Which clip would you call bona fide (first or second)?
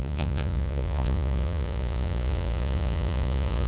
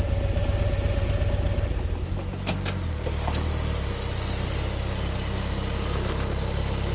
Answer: second